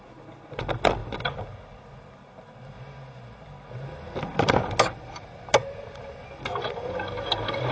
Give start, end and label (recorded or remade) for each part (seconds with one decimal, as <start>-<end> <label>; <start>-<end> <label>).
0.0-7.7 recorded